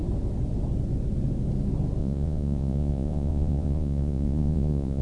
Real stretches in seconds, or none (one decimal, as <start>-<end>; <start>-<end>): 0.0-2.0